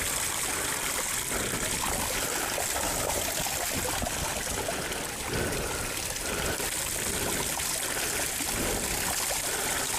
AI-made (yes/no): no